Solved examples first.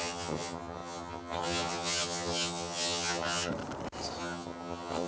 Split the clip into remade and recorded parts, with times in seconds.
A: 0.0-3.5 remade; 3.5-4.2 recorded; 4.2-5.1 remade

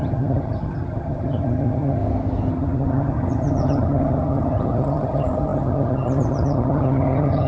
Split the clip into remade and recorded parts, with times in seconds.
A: 0.0-2.0 remade; 2.0-2.5 recorded; 2.5-7.5 remade

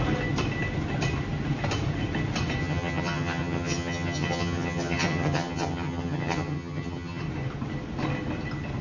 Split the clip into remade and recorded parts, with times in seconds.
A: 0.0-2.6 recorded; 2.6-7.2 remade; 7.2-8.8 recorded

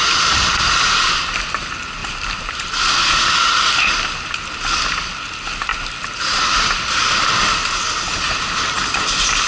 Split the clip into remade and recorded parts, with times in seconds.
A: 0.0-9.5 recorded

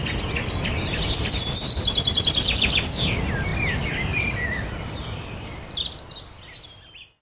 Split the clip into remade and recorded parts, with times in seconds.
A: 0.0-7.2 recorded

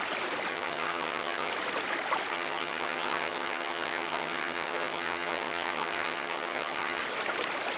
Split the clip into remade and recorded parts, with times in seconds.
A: 0.0-0.5 recorded; 0.5-1.5 remade; 1.5-2.3 recorded; 2.3-7.0 remade; 7.0-7.8 recorded